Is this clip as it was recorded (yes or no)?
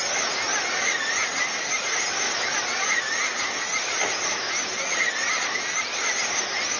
yes